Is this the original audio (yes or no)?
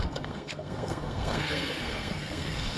no